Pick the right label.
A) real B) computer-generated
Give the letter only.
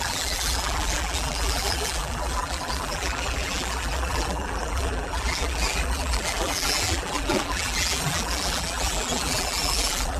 B